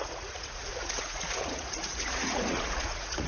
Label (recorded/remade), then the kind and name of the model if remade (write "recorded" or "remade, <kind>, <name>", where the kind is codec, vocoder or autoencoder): remade, vocoder, Vocos